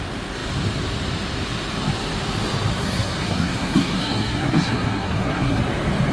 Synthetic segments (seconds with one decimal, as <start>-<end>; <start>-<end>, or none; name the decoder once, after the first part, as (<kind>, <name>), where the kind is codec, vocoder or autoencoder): 2.7-5.6 (codec, SNAC)